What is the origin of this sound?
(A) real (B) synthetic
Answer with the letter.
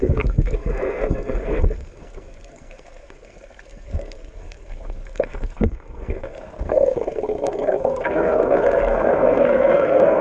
B